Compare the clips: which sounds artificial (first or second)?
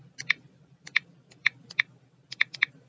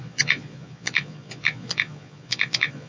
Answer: second